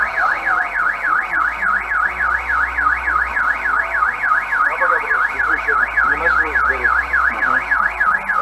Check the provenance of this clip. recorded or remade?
recorded